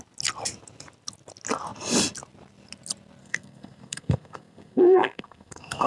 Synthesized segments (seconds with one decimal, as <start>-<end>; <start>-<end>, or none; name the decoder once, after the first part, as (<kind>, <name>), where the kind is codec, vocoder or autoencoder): 3.2-5.9 (codec, SNAC)

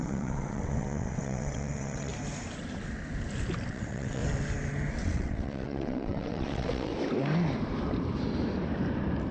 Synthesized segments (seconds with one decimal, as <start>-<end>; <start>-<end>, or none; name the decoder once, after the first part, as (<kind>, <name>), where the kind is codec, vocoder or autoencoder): 0.0-2.1 (vocoder, WaveNeXt); 3.7-4.2; 4.9-6.9